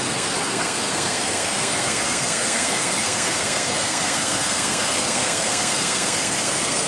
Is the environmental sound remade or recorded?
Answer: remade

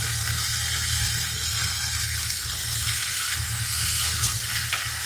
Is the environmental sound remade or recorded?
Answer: remade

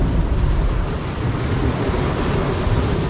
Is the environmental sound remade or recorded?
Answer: recorded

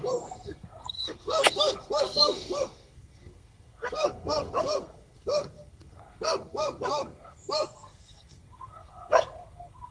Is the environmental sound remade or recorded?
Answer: remade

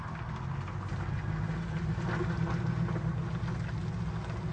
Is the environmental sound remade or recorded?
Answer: recorded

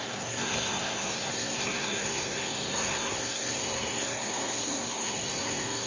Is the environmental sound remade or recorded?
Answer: remade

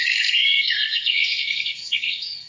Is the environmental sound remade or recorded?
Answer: remade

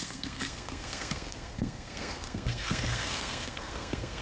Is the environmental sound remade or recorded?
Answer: remade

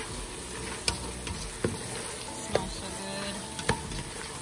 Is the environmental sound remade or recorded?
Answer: recorded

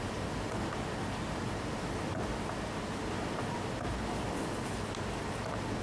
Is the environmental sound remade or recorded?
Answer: recorded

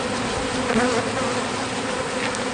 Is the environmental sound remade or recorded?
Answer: recorded